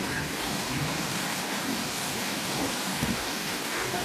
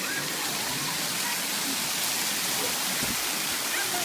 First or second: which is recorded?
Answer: second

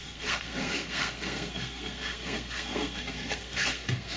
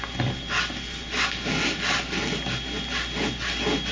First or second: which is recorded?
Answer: second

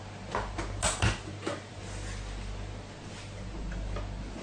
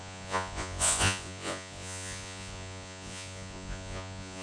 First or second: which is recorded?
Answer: first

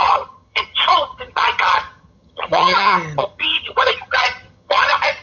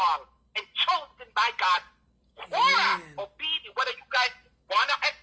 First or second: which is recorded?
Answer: second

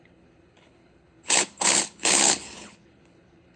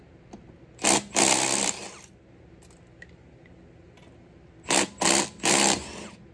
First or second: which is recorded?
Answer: second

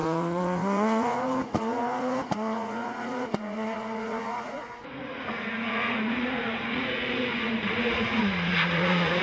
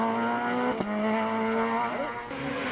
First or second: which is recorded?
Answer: second